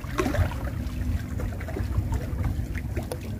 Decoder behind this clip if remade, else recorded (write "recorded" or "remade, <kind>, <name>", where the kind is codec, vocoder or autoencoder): recorded